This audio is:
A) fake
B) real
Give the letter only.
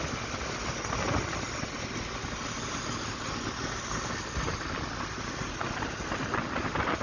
B